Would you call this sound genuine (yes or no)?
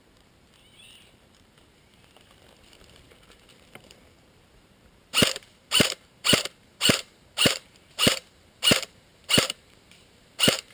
no